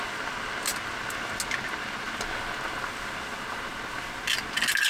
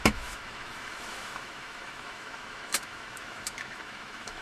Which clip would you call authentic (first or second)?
first